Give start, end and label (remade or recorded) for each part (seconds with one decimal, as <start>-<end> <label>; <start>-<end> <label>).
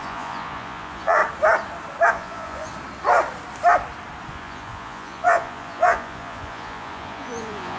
0.0-1.2 remade; 1.2-2.1 recorded; 2.1-2.7 remade; 2.7-4.3 recorded; 4.3-7.8 remade